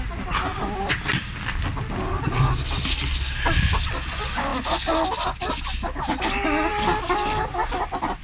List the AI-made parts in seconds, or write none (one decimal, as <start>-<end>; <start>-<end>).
none